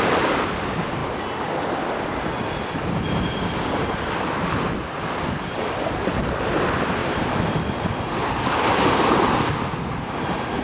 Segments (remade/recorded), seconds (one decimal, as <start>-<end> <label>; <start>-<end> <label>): 0.0-10.6 recorded